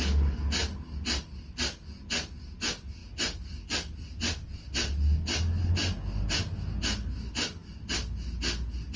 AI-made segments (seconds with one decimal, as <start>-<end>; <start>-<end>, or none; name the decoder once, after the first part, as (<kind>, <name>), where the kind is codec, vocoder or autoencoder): none